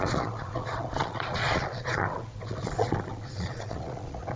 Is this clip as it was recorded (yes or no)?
no